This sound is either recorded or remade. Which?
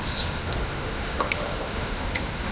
remade